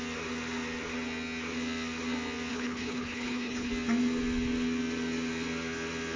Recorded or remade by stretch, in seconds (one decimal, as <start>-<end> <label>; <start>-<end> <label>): 0.0-2.5 recorded; 2.5-3.7 remade; 3.7-6.2 recorded